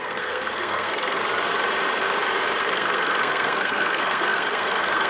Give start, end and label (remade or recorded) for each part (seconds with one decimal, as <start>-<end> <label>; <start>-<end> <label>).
0.0-1.2 remade; 1.2-2.6 recorded; 2.6-5.1 remade